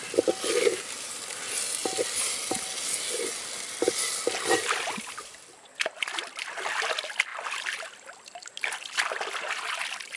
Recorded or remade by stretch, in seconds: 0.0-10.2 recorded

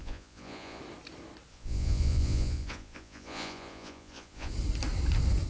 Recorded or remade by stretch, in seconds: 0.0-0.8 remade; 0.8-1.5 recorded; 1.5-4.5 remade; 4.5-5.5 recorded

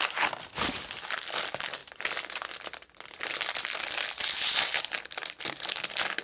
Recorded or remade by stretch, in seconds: 0.0-6.2 recorded

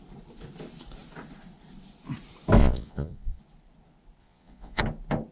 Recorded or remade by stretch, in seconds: 0.0-2.6 recorded; 2.6-3.4 remade; 3.4-4.2 recorded; 4.2-4.8 remade; 4.8-5.3 recorded